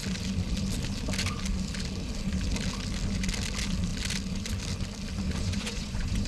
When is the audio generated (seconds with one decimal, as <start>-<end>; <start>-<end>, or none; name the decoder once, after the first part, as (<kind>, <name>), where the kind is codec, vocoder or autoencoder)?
5.4-6.3 (vocoder, Vocos)